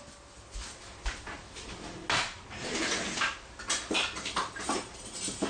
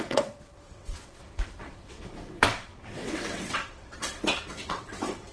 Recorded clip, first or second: first